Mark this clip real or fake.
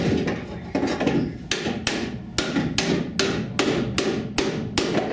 real